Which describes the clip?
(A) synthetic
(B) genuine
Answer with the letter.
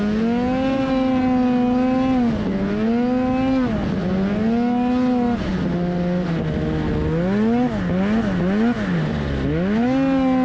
B